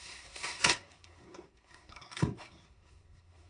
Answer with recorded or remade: remade